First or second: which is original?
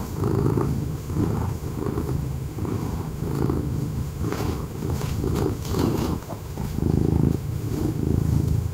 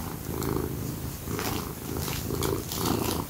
second